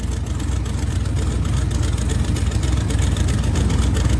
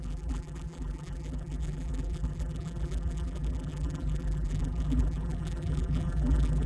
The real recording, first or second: first